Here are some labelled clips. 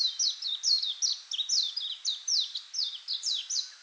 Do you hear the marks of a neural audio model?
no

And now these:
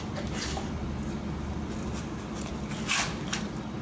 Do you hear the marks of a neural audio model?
no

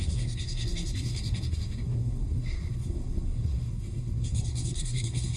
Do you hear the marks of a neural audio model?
yes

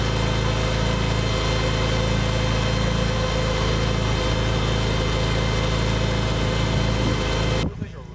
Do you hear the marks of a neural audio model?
no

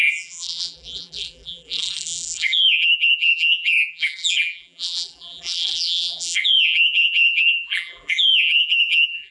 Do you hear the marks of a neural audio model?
yes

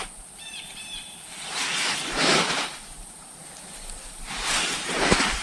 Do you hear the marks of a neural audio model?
yes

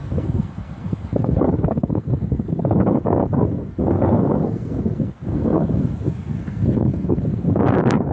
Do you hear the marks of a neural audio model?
yes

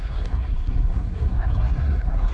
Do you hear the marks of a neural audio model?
yes